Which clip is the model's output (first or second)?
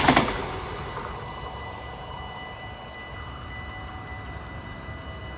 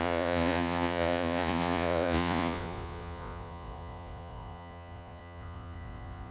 second